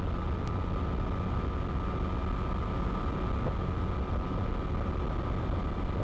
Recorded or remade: recorded